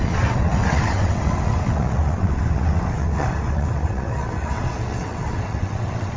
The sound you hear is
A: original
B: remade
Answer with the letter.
B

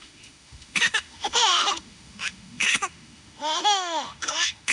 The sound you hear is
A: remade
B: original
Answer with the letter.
A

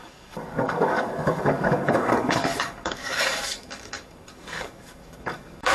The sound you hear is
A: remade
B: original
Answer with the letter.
A